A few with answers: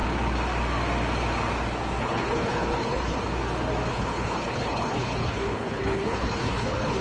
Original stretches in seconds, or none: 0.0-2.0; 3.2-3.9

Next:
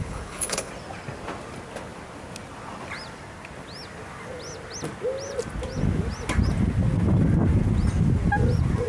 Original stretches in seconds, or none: 0.7-8.9